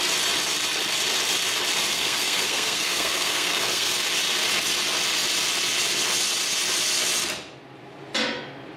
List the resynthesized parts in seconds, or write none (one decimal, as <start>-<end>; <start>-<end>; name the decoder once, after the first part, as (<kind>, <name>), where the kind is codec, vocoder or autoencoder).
1.9-3.9 (codec, SNAC)

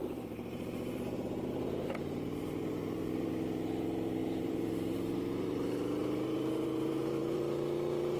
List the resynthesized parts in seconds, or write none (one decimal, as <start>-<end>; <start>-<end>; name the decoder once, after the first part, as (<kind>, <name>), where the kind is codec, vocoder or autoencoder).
0.0-3.3 (vocoder, BigVGAN v2); 4.2-7.4

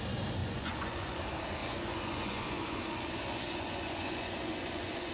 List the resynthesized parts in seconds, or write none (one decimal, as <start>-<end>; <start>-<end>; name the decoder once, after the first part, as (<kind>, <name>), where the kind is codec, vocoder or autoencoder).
0.4-1.2 (vocoder, Vocos); 1.6-5.1